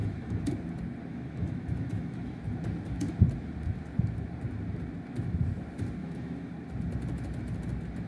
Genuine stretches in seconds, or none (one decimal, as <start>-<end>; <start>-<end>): 0.5-1.1; 2.4-6.0; 6.5-8.1